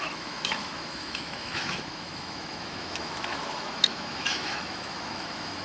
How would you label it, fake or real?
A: fake